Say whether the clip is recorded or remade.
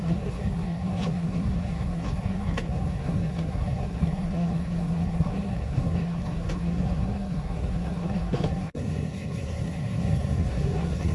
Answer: remade